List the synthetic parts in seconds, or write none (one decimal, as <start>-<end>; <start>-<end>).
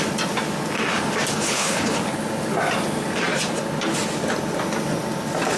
1.3-2.0